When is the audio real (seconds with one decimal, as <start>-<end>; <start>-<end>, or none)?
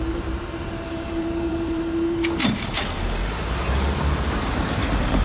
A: none